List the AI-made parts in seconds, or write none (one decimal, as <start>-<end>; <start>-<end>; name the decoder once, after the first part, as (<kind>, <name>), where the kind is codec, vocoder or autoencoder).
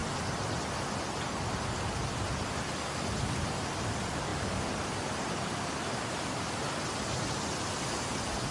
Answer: none